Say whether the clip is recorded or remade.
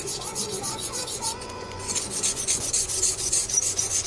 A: remade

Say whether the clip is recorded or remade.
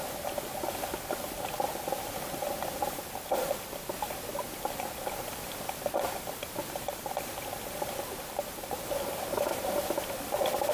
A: recorded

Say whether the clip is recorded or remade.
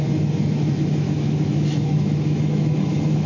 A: remade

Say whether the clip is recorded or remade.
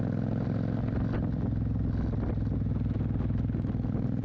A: recorded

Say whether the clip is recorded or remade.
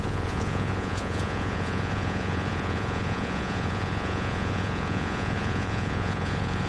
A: remade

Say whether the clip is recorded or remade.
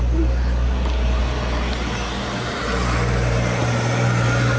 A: recorded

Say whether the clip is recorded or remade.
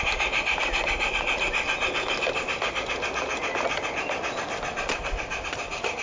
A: recorded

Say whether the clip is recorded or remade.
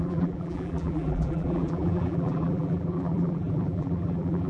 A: remade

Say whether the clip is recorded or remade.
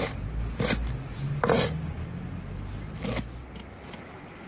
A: recorded